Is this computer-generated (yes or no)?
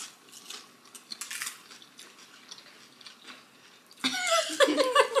no